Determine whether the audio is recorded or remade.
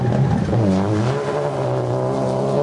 recorded